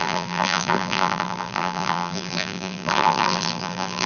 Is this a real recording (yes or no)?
no